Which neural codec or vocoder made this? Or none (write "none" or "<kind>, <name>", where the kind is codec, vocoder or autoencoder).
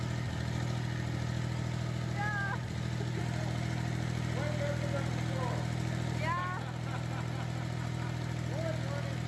none